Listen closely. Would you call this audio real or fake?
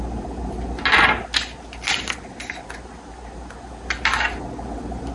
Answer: real